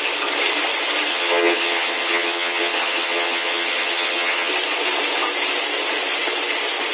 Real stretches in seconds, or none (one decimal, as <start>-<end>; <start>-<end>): 0.0-1.1; 4.5-6.9